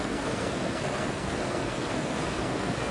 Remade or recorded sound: remade